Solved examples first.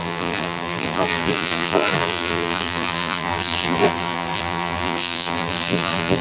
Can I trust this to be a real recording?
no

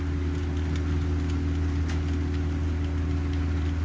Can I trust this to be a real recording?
yes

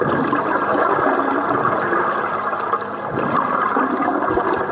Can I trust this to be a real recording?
yes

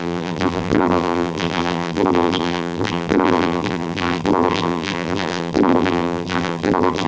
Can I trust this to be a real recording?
no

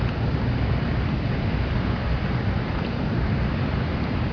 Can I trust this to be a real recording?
no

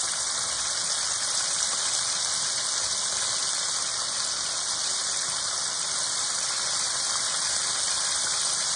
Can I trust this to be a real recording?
yes